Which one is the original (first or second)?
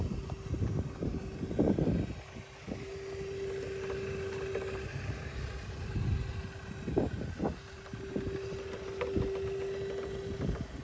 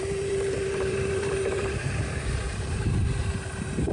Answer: first